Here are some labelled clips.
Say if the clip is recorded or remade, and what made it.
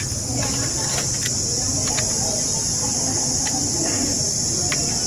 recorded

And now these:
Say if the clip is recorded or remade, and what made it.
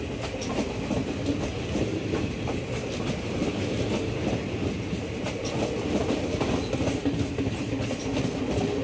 recorded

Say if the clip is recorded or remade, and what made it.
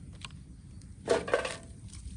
recorded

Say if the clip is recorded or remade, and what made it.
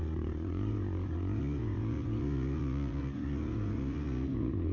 remade, vocoder, Vocos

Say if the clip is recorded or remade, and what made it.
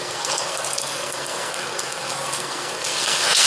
remade, codec, SNAC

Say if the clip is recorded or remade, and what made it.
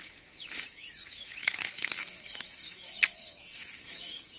remade, autoencoder, DAC-VAE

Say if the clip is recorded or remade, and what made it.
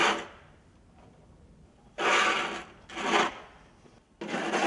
recorded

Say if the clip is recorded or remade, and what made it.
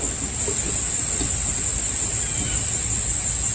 recorded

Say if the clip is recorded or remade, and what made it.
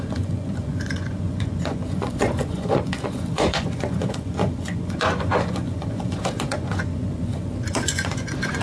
remade, vocoder, Vocos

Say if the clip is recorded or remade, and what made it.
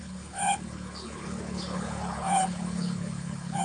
remade, codec, HILCodec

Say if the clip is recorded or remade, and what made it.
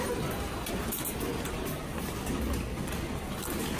recorded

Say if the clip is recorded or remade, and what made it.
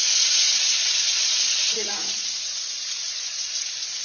remade, vocoder, Vocos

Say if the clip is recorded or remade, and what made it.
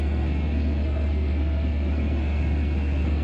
remade, codec, SNAC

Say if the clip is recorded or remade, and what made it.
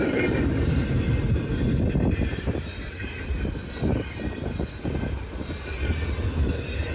remade, vocoder, BigVGAN v2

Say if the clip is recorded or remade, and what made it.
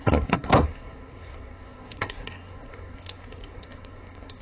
remade, codec, SNAC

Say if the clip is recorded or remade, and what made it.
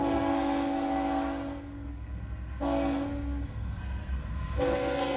remade, codec, SNAC